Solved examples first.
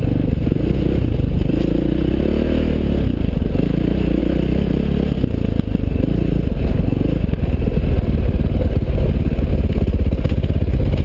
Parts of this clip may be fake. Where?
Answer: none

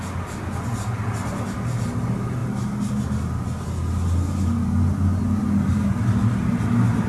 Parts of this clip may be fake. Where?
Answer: none

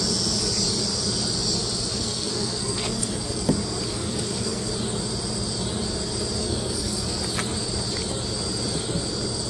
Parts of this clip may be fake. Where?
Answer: 1.9-3.4 (codec, SNAC); 3.9-4.7; 6.4-7.2

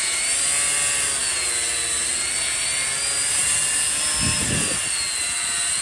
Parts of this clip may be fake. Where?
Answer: none